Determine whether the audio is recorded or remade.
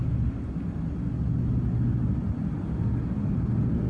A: recorded